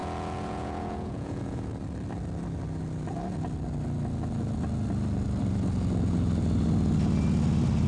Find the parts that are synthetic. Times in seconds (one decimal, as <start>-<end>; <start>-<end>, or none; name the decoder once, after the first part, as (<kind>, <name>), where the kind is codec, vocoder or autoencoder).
0.0-1.7 (vocoder, Vocos)